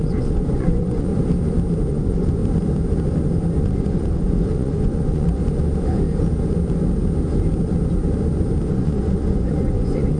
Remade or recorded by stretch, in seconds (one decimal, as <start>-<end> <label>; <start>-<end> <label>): 0.0-1.1 remade; 1.1-1.9 recorded; 1.9-2.4 remade; 2.4-3.6 recorded; 3.6-5.4 remade; 5.4-8.7 recorded; 8.7-10.2 remade